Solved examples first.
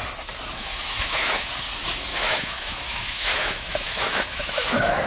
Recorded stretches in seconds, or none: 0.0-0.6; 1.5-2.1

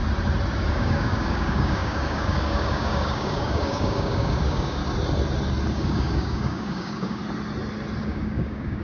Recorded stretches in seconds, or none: 0.0-0.7; 4.8-5.7; 7.2-8.0

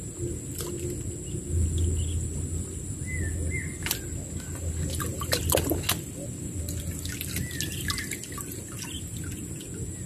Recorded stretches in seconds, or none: 0.0-10.1

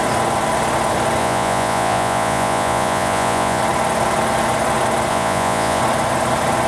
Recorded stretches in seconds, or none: 0.0-1.2; 3.6-5.1; 5.8-6.7

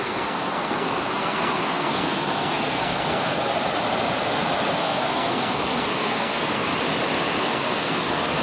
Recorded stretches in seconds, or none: 3.5-4.8; 6.7-7.4

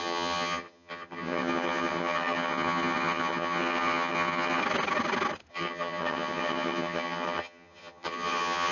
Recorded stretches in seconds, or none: 4.6-5.5